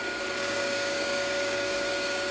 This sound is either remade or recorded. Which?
remade